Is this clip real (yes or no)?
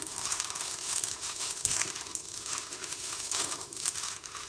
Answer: no